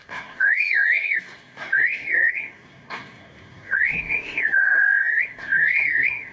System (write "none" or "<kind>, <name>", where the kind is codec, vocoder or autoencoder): codec, SNAC